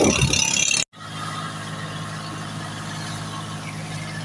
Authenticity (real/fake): real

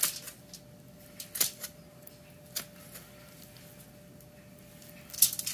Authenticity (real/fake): real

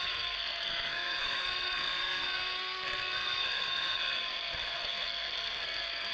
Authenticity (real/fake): fake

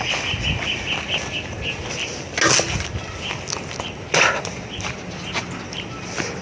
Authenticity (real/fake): real